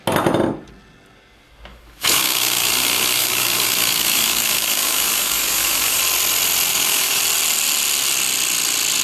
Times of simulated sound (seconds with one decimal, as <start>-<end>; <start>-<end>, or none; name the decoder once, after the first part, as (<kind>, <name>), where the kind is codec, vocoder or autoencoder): 1.7-2.7 (codec, DAC); 3.2-6.0; 6.7-7.2

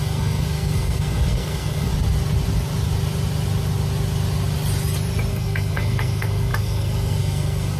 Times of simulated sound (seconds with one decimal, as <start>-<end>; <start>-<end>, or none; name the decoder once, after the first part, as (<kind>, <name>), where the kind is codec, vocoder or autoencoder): 0.0-1.9 (codec, SNAC); 5.3-7.8

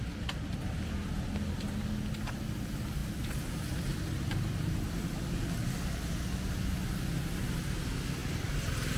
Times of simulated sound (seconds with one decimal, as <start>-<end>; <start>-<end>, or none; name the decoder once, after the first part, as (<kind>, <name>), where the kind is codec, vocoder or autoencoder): none

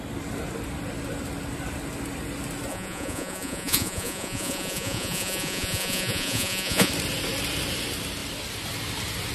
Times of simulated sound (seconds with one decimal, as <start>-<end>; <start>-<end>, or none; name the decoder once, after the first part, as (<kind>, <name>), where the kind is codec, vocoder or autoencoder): 2.7-6.9 (vocoder, Vocos)

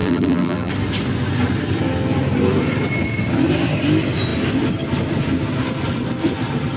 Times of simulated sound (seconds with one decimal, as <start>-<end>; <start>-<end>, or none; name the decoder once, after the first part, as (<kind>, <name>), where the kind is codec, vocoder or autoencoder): 0.0-0.7 (vocoder, BigVGAN v2)

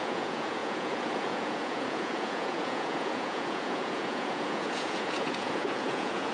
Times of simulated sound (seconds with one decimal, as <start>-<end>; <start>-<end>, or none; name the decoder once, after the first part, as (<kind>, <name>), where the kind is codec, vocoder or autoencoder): 0.0-6.3 (vocoder, Vocos)